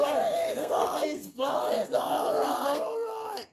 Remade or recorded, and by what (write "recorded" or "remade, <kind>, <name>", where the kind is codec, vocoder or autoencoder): remade, codec, SNAC